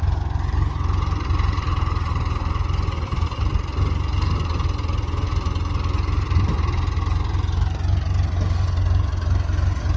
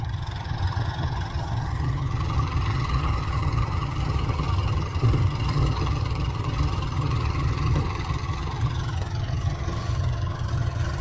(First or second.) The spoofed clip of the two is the second